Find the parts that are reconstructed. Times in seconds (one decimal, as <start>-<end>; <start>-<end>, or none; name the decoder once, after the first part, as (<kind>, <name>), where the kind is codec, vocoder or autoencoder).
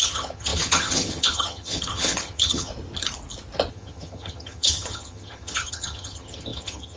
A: 0.0-2.7 (vocoder, HiFi-GAN); 3.7-7.0